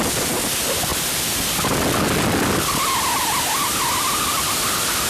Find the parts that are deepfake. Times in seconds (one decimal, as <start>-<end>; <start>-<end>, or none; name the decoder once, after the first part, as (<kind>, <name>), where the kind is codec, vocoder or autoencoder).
none